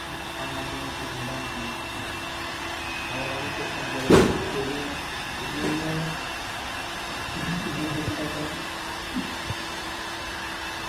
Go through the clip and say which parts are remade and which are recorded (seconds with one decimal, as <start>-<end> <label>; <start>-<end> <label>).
0.0-7.0 recorded; 7.0-10.4 remade; 10.4-10.9 recorded